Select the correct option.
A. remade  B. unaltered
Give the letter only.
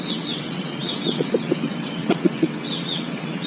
A